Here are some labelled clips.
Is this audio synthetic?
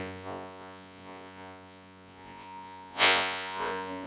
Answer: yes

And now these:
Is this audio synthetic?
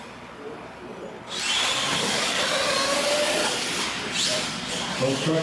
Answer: no